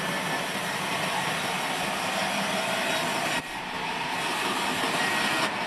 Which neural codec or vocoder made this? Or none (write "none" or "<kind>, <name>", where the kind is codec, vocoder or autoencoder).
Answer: none